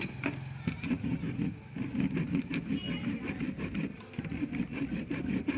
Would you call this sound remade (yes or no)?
no